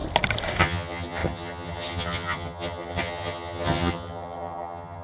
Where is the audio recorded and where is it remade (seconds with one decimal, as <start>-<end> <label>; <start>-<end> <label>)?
0.0-0.6 recorded; 0.6-5.0 remade